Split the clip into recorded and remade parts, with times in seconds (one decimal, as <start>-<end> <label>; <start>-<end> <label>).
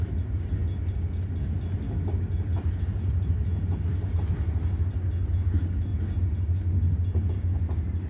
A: 0.0-8.1 recorded